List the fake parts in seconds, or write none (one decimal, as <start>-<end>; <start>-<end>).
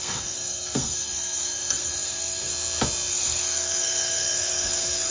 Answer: 0.0-2.5; 3.1-5.1